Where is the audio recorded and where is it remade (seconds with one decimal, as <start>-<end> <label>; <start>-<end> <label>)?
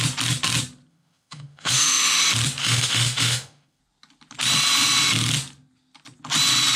0.0-0.9 recorded; 0.9-2.2 remade; 2.2-2.6 recorded; 2.6-3.8 remade; 3.8-6.8 recorded